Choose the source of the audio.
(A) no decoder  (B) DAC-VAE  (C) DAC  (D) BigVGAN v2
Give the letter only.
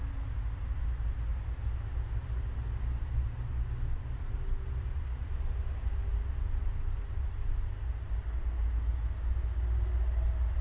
A